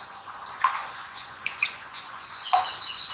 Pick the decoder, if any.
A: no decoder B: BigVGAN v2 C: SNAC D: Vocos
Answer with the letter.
D